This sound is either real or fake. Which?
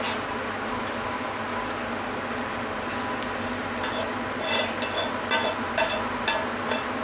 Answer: real